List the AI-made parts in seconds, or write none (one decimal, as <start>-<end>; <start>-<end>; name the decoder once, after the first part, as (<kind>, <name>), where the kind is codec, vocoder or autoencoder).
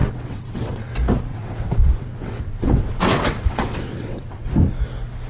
0.0-0.9 (vocoder, WaveNeXt); 1.3-4.5